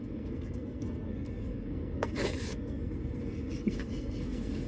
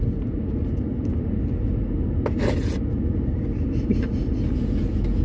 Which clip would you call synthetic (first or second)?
first